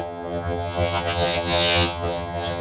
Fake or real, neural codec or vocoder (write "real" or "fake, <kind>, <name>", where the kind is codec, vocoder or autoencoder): fake, vocoder, HiFi-GAN